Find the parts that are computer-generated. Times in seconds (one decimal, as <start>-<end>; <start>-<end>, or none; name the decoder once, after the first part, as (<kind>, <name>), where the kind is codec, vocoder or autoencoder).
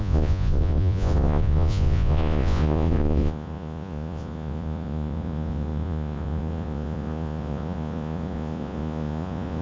0.0-9.6 (vocoder, Vocos)